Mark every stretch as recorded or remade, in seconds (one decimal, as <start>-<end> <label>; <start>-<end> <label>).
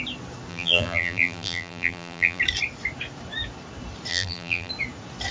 0.0-0.5 recorded; 0.5-2.4 remade; 2.4-4.1 recorded; 4.1-4.7 remade; 4.7-5.3 recorded